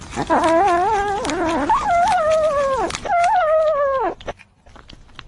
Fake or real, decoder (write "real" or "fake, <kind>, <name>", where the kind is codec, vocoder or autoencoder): real